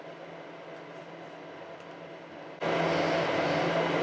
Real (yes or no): yes